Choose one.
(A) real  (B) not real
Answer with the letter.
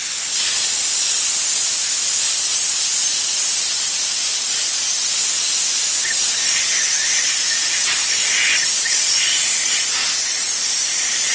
A